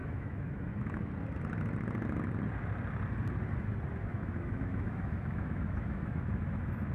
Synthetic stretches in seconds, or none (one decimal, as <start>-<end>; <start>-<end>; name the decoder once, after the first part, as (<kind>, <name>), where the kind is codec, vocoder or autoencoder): 0.0-1.1 (autoencoder, DAC-VAE); 4.1-6.9